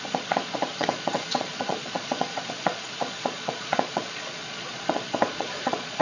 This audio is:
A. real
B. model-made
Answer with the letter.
B